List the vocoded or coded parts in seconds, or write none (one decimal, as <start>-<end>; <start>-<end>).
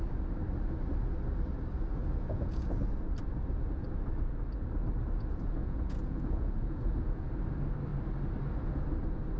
2.0-2.8; 5.6-7.3